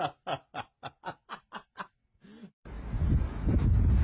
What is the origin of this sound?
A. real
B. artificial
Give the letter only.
A